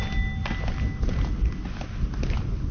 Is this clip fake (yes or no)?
no